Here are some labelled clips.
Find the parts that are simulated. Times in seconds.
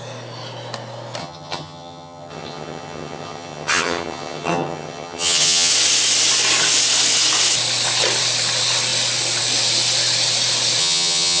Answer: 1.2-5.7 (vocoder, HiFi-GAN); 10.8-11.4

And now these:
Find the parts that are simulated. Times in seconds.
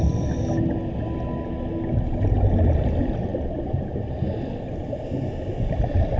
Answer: none